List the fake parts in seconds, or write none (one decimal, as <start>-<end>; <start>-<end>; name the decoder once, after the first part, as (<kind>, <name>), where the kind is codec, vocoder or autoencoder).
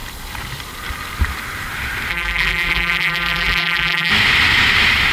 2.1-4.1 (vocoder, BigVGAN v2)